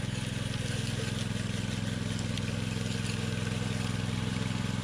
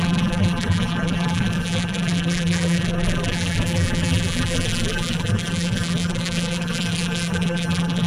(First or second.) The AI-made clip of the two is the second